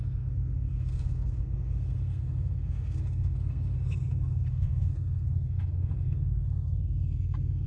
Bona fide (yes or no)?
no